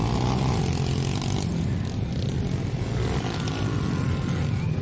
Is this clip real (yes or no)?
yes